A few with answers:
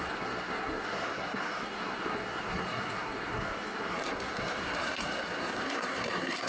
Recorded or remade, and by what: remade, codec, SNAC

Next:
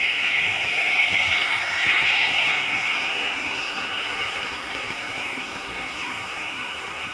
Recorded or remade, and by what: remade, codec, SNAC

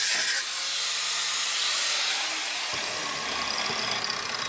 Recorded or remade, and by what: recorded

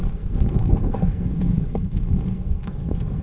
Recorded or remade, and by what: remade, codec, SNAC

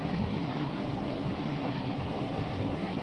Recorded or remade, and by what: remade, codec, SNAC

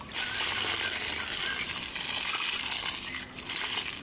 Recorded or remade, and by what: recorded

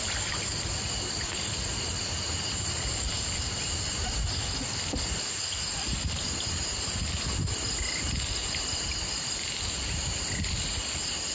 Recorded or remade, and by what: recorded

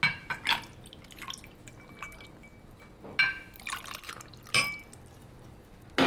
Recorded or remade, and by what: recorded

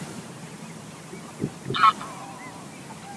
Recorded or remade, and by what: recorded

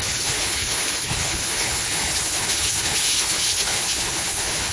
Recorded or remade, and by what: remade, codec, HILCodec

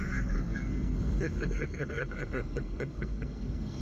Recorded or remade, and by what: remade, codec, SNAC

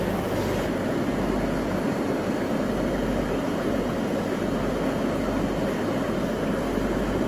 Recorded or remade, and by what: recorded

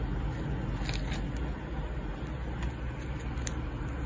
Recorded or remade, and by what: recorded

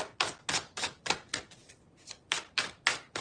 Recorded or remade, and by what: recorded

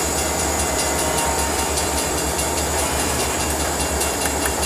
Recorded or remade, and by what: remade, vocoder, BigVGAN v2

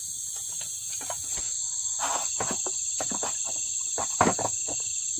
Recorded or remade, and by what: recorded